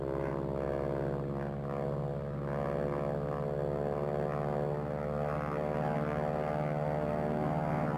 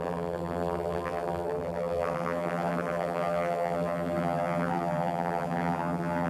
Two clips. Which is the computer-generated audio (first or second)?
second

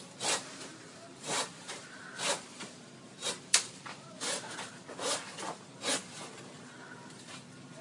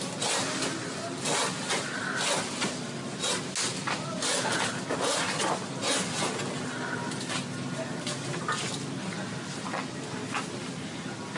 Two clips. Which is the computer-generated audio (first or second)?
first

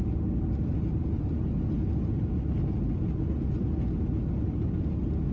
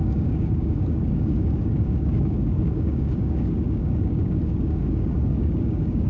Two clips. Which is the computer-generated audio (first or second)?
second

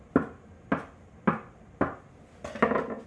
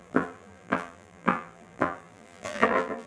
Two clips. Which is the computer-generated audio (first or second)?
second